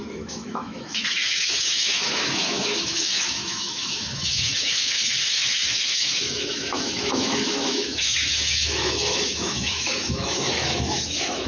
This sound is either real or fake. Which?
fake